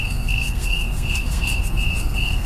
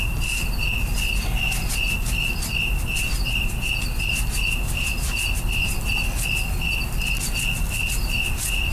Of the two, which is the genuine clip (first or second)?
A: second